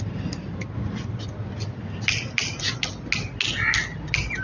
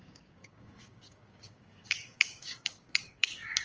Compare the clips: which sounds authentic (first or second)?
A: first